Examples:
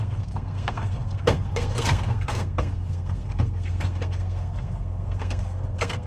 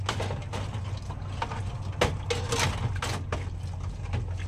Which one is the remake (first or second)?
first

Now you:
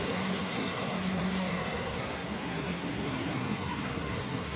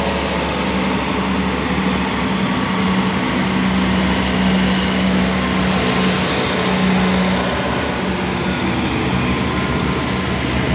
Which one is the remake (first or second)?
first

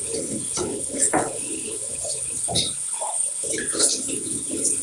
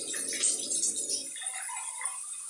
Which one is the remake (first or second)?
first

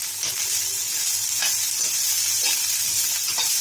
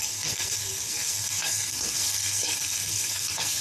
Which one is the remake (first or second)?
second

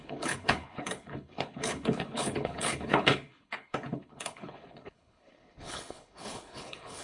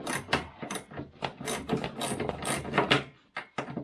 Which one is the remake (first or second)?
first